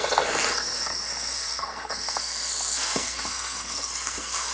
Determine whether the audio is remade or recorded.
remade